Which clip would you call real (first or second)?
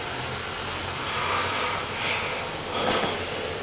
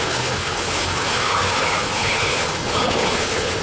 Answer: first